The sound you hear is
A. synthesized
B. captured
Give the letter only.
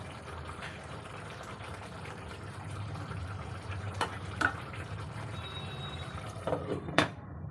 A